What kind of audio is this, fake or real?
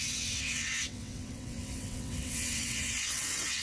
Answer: fake